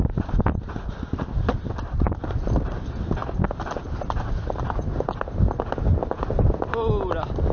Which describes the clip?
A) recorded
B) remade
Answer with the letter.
A